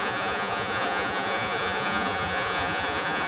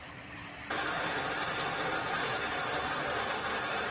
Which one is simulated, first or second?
first